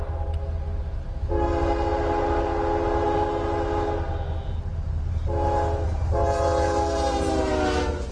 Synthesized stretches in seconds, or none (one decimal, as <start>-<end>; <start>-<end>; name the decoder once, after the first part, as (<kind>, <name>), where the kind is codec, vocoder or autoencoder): none